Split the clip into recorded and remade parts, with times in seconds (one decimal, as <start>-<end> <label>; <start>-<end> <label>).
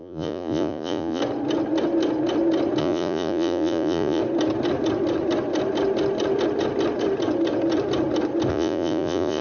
0.0-1.2 remade; 1.2-2.8 recorded; 2.8-4.2 remade; 4.2-8.5 recorded; 8.5-9.4 remade